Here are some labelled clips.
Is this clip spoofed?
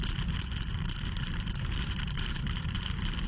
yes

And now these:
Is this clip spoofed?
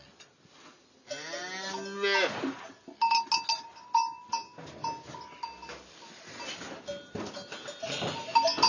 no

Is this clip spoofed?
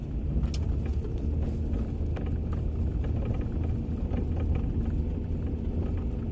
no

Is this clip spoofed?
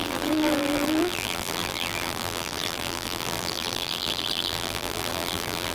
yes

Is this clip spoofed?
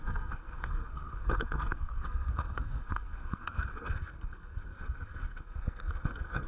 yes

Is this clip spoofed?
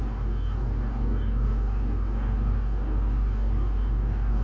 yes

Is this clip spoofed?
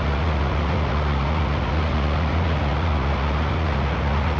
yes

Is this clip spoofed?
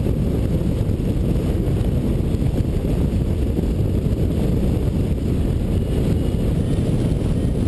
no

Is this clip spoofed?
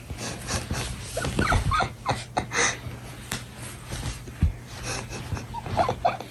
no